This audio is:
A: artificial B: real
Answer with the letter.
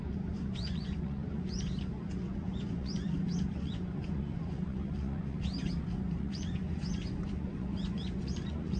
A